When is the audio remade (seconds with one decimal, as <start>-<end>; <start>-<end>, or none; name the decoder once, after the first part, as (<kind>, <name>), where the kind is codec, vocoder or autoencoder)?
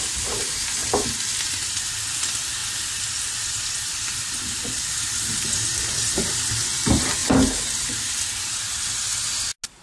none